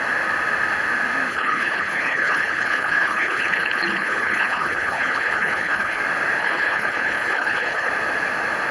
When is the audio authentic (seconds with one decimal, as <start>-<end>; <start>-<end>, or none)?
0.0-1.3; 6.0-6.4; 7.9-8.7